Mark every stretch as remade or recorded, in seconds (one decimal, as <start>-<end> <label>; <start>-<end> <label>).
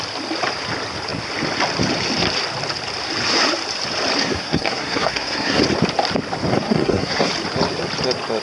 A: 0.0-4.2 recorded; 4.2-5.6 remade; 5.6-6.5 recorded; 6.5-7.3 remade; 7.3-8.4 recorded